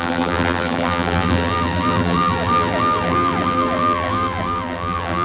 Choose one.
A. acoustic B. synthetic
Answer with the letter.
B